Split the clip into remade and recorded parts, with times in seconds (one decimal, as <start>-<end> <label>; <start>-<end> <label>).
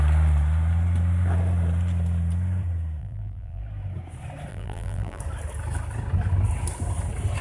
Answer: 0.0-3.0 recorded; 3.0-3.6 remade; 3.6-4.5 recorded; 4.5-5.2 remade; 5.2-7.4 recorded